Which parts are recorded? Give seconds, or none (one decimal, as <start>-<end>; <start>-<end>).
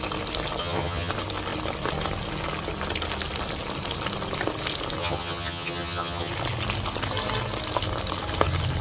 0.0-0.6; 1.1-5.0; 6.3-8.8